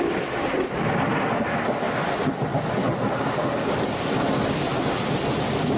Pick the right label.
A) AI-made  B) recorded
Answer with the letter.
B